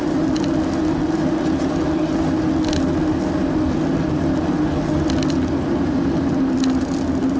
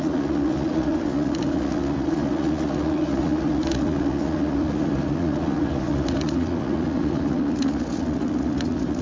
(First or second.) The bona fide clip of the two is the first